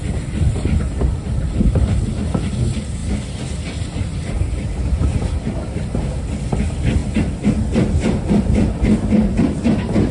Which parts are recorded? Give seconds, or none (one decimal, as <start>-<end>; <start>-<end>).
0.0-10.1